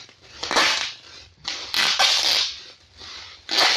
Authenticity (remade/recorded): recorded